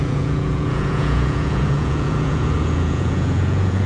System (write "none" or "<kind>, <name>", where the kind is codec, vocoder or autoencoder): vocoder, Vocos